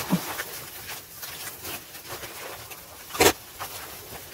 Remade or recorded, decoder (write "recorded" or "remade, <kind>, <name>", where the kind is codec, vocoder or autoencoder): remade, vocoder, BigVGAN v2